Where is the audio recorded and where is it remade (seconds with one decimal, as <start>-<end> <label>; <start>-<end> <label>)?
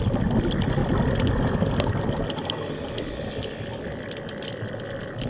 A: 0.0-5.3 recorded